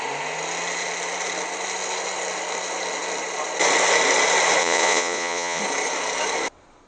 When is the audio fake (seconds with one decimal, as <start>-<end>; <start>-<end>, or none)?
4.6-5.6